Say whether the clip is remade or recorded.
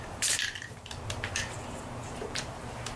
remade